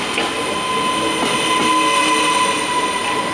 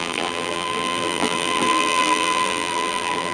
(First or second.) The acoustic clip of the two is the first